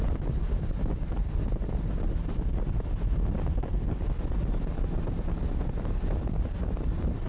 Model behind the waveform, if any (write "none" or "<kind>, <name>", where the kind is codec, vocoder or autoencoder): none